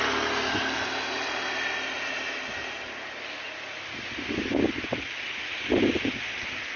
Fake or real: real